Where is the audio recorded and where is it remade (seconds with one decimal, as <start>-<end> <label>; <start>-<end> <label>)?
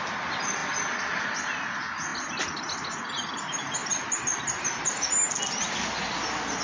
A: 0.0-6.6 recorded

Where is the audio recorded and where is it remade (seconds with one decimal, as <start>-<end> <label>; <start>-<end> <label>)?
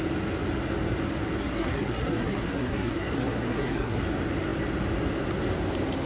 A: 0.0-1.4 recorded; 1.4-4.0 remade; 4.0-6.1 recorded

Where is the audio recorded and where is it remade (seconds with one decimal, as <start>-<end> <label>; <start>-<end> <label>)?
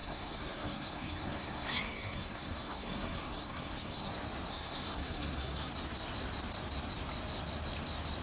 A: 0.0-4.1 remade; 4.1-4.5 recorded; 4.5-5.7 remade; 5.7-8.2 recorded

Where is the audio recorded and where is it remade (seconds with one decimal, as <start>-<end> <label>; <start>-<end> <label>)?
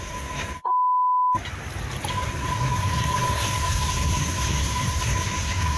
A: 0.0-0.7 remade; 0.7-2.1 recorded; 2.1-5.8 remade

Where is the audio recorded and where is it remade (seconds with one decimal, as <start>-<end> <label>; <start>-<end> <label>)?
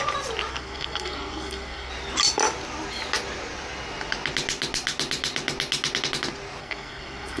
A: 0.0-0.5 recorded; 0.5-1.9 remade; 1.9-6.6 recorded; 6.6-7.4 remade